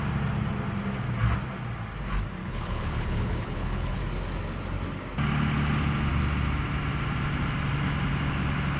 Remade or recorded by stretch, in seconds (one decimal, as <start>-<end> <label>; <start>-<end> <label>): 0.0-2.4 recorded; 2.4-4.0 remade; 4.0-8.8 recorded